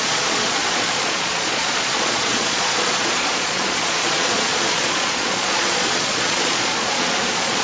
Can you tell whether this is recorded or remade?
remade